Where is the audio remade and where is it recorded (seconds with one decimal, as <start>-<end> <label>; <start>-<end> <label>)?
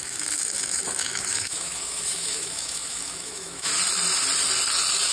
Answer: 0.0-3.7 remade; 3.7-5.1 recorded